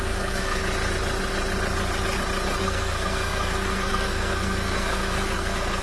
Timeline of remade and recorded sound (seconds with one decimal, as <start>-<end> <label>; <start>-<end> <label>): 0.0-0.6 remade; 0.6-2.6 recorded; 2.6-5.8 remade